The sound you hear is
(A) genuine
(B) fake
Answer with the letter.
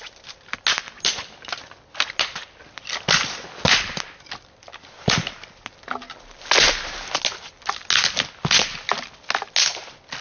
A